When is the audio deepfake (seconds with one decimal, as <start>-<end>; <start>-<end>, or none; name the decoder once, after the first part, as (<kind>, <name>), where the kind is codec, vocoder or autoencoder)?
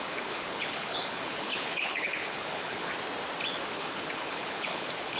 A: 0.0-2.9 (codec, HILCodec); 3.7-5.2